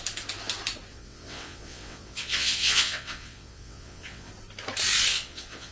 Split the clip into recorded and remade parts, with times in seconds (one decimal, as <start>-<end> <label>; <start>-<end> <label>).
0.0-0.9 recorded; 0.9-4.3 remade; 4.3-5.1 recorded; 5.1-5.7 remade